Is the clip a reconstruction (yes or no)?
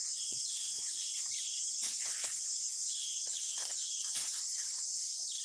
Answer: yes